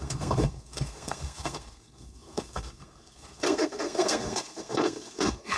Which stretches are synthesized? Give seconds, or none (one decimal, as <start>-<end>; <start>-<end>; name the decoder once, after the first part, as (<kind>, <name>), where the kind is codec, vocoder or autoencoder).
0.0-5.6 (codec, SNAC)